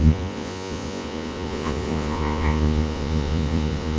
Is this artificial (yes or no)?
yes